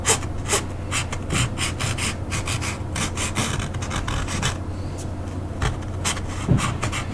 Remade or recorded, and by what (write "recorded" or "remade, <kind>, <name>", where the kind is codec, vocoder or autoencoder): recorded